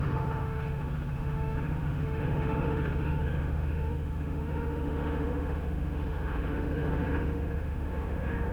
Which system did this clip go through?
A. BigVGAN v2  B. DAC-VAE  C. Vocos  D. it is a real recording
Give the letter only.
B